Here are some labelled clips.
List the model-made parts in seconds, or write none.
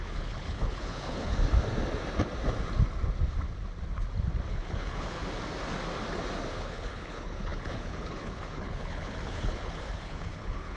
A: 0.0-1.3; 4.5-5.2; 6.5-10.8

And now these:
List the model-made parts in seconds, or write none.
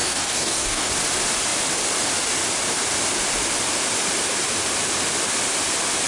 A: 0.0-0.9